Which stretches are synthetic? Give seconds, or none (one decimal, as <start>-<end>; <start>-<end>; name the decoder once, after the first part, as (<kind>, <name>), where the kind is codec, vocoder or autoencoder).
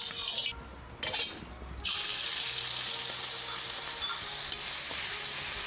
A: none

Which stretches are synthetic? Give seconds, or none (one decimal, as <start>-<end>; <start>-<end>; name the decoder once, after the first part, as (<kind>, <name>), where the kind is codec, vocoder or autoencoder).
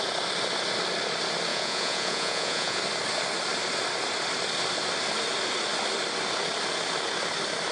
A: 1.5-2.8 (vocoder, Vocos)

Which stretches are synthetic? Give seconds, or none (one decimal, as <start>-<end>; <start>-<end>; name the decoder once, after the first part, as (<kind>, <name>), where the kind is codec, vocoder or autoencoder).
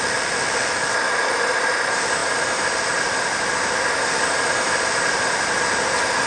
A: none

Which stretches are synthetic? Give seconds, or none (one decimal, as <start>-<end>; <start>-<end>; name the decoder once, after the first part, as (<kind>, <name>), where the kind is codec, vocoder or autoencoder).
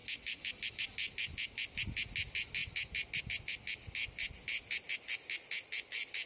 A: none